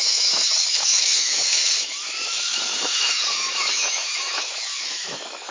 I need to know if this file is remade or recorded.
remade